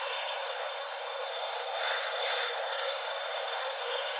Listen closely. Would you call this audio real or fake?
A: fake